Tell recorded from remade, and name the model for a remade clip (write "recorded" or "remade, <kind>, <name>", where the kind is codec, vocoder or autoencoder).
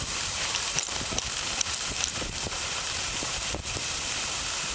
remade, vocoder, BigVGAN v2